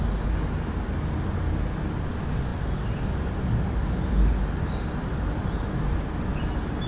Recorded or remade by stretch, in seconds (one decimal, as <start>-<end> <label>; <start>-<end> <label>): 0.0-6.9 recorded